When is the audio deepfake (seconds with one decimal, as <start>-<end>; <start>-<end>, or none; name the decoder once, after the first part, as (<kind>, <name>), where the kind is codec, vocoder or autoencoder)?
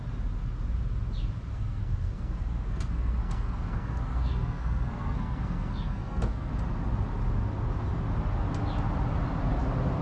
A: 1.5-6.5 (codec, SNAC)